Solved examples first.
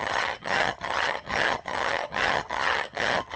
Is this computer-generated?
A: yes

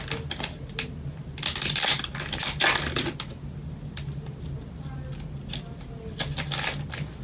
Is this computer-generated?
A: no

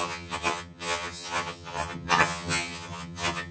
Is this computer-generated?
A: yes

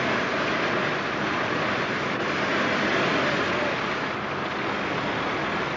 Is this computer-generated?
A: no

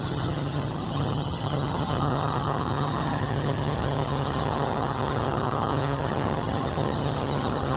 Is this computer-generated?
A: yes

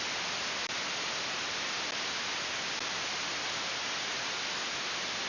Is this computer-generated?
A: no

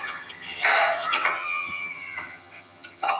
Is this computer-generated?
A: yes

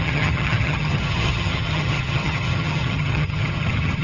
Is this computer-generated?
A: yes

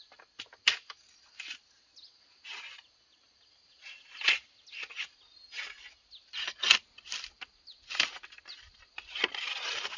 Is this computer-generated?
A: no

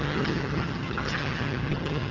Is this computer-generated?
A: yes